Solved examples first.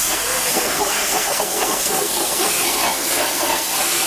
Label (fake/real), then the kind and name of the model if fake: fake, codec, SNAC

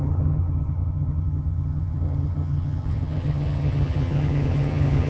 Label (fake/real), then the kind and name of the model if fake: fake, vocoder, HiFi-GAN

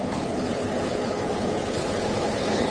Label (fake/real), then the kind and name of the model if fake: fake, codec, HILCodec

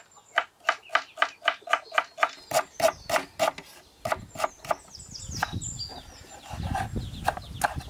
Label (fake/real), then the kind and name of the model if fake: real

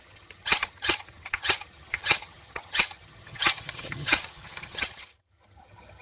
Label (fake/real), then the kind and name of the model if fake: fake, vocoder, HiFi-GAN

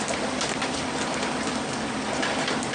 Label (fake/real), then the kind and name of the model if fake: real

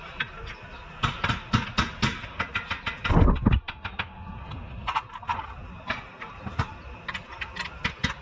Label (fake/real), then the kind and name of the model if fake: real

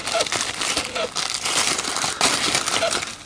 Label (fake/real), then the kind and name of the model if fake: fake, vocoder, BigVGAN v2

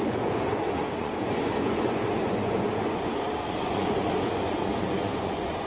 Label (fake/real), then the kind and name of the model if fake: fake, vocoder, Vocos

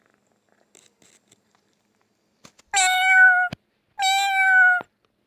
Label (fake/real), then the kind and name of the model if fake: real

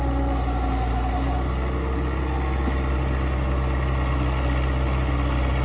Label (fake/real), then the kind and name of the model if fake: real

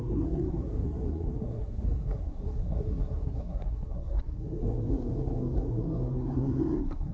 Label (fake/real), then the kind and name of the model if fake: fake, codec, SNAC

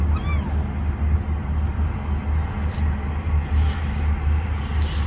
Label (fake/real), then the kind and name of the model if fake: real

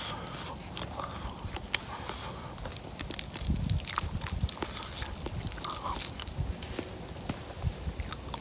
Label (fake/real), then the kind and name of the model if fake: real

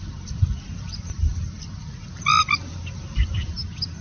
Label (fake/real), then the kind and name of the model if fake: real